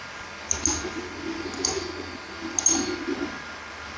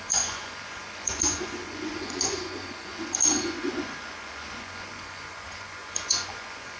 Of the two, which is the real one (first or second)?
first